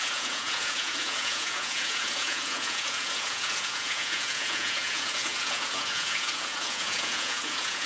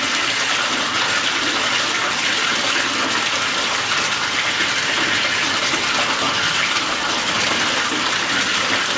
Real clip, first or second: second